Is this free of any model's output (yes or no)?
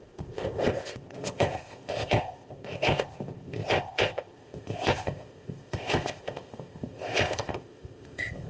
no